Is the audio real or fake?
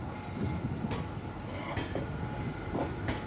real